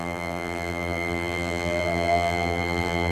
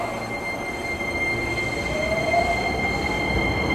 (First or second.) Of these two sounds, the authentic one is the second